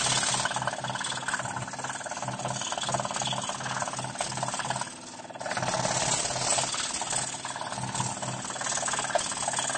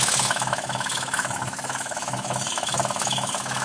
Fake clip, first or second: second